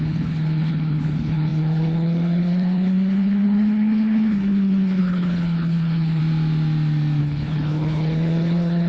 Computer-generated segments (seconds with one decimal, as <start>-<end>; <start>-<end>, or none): 0.0-6.2; 7.2-8.9